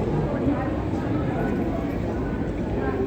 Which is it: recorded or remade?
recorded